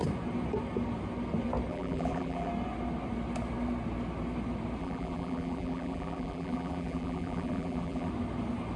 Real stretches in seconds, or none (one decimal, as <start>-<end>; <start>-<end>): 0.0-1.7; 2.5-4.8; 8.1-8.8